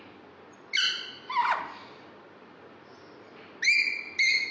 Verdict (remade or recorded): recorded